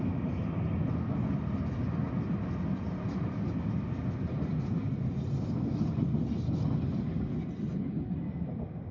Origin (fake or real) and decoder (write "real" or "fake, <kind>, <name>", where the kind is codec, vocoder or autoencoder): real